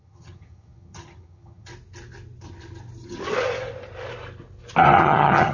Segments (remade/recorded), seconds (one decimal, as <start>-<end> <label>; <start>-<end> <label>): 0.0-1.7 remade; 1.7-5.0 recorded; 5.0-5.5 remade